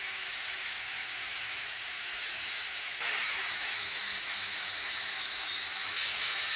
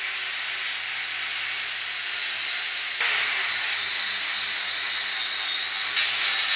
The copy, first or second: first